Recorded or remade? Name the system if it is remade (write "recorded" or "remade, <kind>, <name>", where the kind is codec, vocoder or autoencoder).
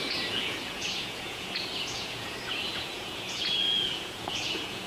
remade, vocoder, Vocos